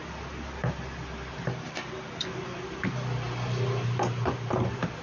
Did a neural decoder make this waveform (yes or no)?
no